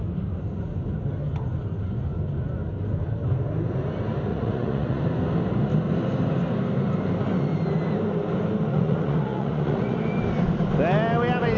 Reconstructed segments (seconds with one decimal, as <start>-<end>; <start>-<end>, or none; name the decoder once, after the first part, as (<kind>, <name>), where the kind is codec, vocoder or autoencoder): 4.3-5.0 (vocoder, Vocos); 8.7-10.0